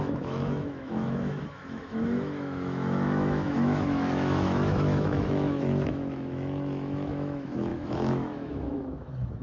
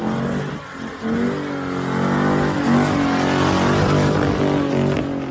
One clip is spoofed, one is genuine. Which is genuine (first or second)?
second